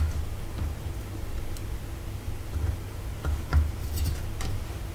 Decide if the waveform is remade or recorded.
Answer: recorded